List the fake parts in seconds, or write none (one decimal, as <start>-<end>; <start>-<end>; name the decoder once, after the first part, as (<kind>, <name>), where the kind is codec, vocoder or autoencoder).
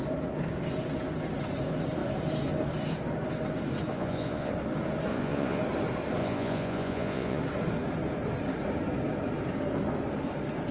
3.9-4.5 (vocoder, Vocos); 5.1-5.6; 6.2-7.4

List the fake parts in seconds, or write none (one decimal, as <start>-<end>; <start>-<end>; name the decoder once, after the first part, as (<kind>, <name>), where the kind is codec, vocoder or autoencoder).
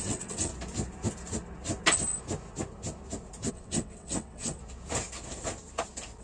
0.0-0.5 (vocoder, WaveNeXt); 3.5-4.6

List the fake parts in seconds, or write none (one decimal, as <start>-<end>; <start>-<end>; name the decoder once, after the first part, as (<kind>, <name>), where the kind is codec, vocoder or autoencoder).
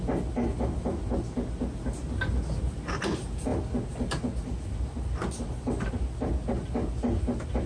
none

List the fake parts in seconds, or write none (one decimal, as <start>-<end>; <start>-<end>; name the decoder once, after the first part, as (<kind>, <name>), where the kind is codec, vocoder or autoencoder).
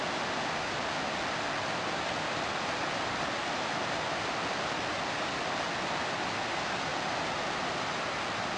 none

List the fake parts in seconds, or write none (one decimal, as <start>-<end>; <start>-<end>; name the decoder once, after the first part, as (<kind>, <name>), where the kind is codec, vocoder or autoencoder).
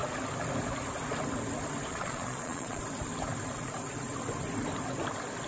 1.9-2.8 (vocoder, Vocos)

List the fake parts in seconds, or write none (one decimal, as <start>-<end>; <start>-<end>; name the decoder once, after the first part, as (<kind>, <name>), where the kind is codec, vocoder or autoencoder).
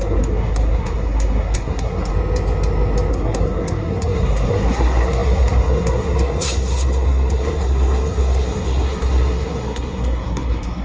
0.0-2.1 (codec, SNAC); 3.1-10.8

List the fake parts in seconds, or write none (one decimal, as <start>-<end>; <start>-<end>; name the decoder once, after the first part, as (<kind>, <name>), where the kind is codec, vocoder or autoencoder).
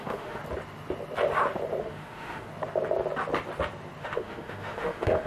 0.0-0.4 (autoencoder, DAC-VAE); 1.8-2.5; 4.0-5.3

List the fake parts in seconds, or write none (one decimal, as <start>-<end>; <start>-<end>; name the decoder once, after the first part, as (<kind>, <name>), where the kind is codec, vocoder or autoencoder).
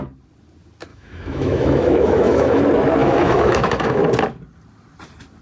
0.9-2.6 (autoencoder, DAC-VAE); 3.0-4.0